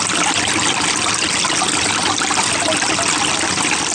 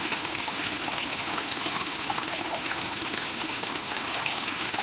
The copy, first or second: second